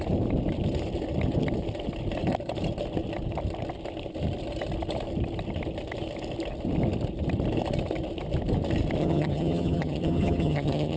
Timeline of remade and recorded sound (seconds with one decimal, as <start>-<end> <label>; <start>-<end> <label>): 0.0-9.0 recorded; 9.0-11.0 remade